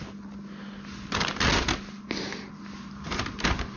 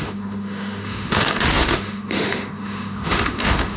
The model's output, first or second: second